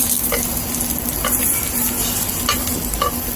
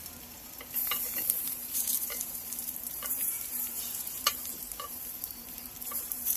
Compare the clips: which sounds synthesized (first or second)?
second